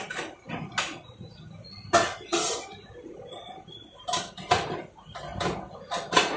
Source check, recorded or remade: recorded